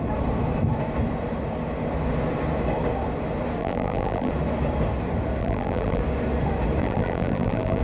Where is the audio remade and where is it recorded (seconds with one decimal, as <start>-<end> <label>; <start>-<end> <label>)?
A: 0.0-3.6 recorded; 3.6-4.3 remade; 4.3-5.4 recorded; 5.4-6.0 remade; 6.0-6.8 recorded; 6.8-7.8 remade